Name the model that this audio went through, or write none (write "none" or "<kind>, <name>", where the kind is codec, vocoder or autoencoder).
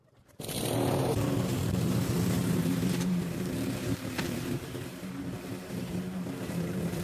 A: vocoder, BigVGAN v2